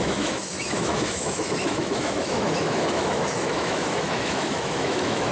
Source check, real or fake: fake